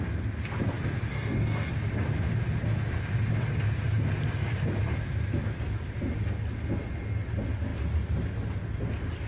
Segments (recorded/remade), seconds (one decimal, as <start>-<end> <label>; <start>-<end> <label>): 0.0-1.1 recorded; 1.1-1.7 remade; 1.7-9.3 recorded